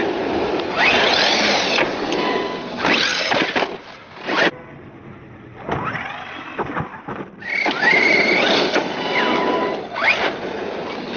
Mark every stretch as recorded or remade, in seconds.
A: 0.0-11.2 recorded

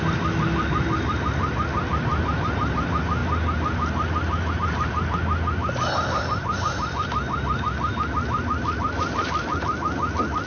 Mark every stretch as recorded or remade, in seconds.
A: 0.0-10.5 recorded

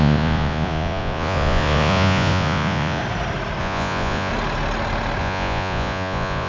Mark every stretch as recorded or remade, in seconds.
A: 0.0-3.0 remade; 3.0-3.6 recorded; 3.6-4.3 remade; 4.3-5.2 recorded; 5.2-6.5 remade

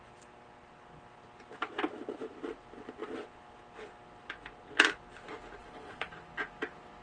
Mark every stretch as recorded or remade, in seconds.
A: 0.0-5.6 recorded; 5.6-6.1 remade; 6.1-7.0 recorded

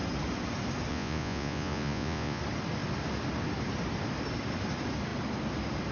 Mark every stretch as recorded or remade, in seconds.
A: 0.0-0.9 recorded; 0.9-2.4 remade; 2.4-5.9 recorded

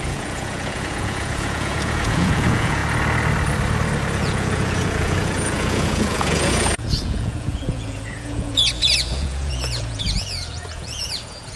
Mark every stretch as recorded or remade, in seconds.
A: 0.0-2.8 remade; 2.8-4.1 recorded; 4.1-11.6 remade

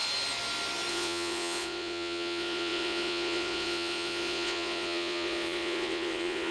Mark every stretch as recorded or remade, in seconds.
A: 0.0-0.9 recorded; 0.9-6.5 remade

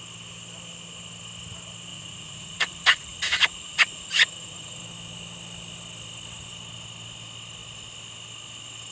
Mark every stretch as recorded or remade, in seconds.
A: 0.0-1.9 recorded; 1.9-4.8 remade; 4.8-8.9 recorded